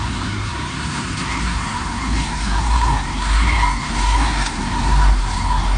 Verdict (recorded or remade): remade